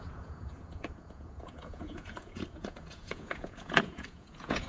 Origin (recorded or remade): remade